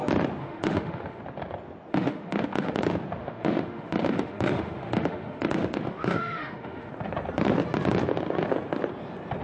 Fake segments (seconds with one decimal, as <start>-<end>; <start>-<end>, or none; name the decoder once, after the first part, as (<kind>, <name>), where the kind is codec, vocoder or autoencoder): 0.4-1.2 (autoencoder, DAC-VAE); 1.9-2.8; 3.2-6.9